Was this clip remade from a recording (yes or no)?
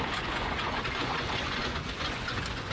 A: yes